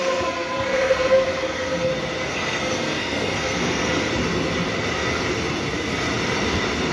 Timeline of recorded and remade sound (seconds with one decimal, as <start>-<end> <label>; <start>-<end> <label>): 0.0-1.9 remade; 1.9-2.3 recorded; 2.3-4.1 remade; 4.1-6.9 recorded